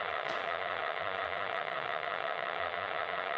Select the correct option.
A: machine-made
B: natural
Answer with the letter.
A